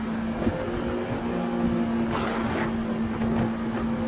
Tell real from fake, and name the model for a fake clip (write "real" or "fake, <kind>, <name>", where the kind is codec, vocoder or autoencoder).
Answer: real